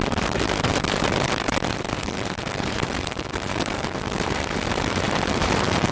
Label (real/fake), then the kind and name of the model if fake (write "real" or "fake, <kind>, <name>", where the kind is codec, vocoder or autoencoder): fake, vocoder, BigVGAN v2